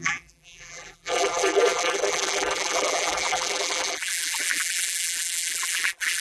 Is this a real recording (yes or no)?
no